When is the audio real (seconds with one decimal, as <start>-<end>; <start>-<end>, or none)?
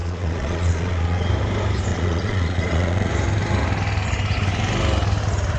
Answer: 1.3-1.9; 3.1-5.6